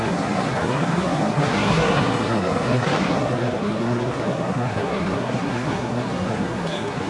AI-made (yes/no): yes